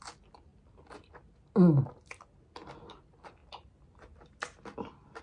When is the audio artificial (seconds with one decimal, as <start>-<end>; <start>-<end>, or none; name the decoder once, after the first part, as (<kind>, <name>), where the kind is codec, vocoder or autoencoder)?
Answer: none